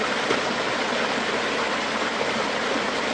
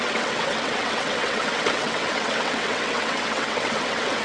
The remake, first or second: second